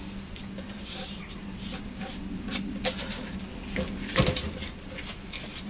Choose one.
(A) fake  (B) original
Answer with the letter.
B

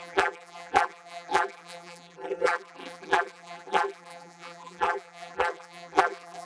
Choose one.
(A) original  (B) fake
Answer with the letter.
B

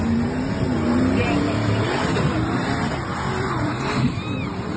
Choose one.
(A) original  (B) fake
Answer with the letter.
B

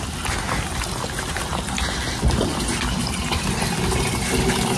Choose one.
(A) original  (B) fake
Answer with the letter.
A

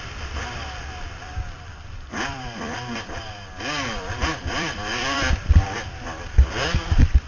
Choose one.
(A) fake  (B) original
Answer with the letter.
A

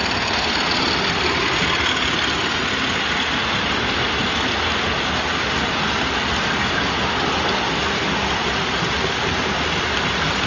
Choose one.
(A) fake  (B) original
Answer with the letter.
B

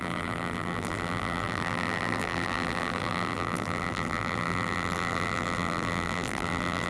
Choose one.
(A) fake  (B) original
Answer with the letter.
A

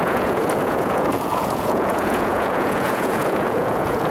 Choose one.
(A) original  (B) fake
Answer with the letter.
B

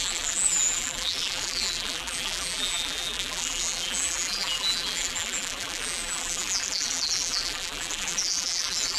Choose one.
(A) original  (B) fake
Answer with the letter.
B